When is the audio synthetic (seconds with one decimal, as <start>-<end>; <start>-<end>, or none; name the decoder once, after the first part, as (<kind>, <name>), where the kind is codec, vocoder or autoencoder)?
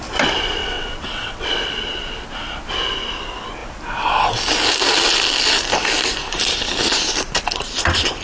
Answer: 0.6-2.0 (vocoder, WaveNeXt)